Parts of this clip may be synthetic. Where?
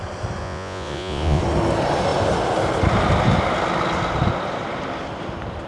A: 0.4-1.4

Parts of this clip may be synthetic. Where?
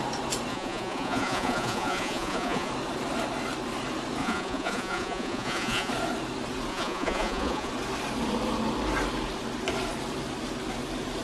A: 0.5-2.7; 4.2-5.9; 6.7-7.7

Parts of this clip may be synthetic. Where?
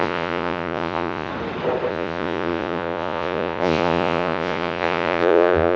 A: 0.0-1.3; 1.9-5.8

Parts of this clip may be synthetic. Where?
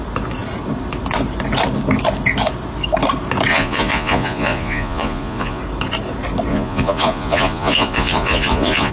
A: 3.5-5.6; 6.5-8.9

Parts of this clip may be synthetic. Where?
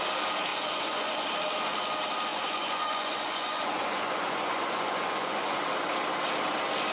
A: 0.5-1.3; 2.3-5.6